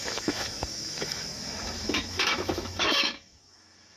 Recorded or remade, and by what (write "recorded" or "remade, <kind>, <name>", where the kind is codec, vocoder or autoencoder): remade, autoencoder, DAC-VAE